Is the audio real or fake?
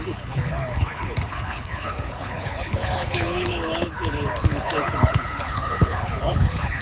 fake